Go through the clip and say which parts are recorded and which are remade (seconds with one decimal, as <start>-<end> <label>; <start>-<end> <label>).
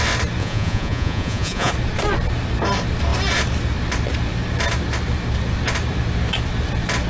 0.0-0.4 recorded; 0.4-1.7 remade; 1.7-7.1 recorded